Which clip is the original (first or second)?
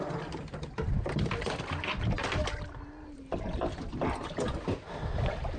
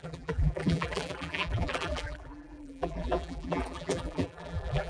first